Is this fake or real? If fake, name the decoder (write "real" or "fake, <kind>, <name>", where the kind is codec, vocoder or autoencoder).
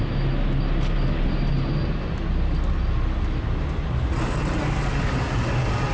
real